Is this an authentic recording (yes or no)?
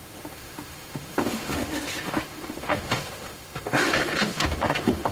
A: no